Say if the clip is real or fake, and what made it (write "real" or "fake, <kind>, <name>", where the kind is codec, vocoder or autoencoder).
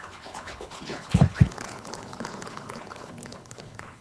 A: fake, codec, HILCodec